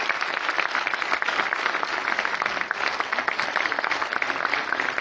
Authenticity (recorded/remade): recorded